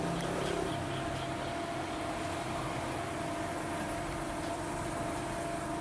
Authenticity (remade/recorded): recorded